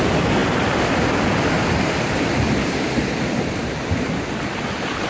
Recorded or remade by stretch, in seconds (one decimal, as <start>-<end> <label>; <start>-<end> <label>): 0.0-5.1 recorded